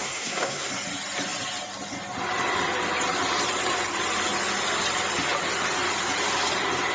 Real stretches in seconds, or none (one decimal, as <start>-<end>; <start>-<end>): 0.7-6.9